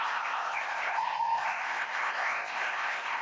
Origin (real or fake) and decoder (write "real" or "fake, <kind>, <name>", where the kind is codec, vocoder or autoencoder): fake, codec, ZipCodec